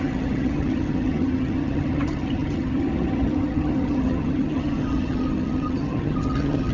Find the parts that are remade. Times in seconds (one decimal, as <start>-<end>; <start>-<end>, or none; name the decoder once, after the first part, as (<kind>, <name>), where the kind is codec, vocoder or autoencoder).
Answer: 0.0-6.7 (vocoder, HiFi-GAN)